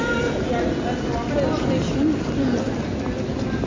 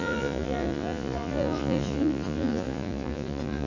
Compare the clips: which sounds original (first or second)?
first